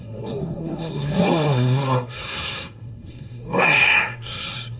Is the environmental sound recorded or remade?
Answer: remade